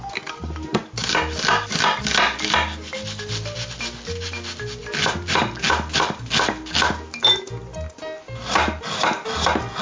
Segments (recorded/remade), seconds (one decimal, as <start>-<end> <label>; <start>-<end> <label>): 0.0-9.8 recorded